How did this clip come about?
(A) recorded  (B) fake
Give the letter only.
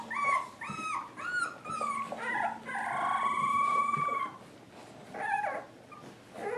A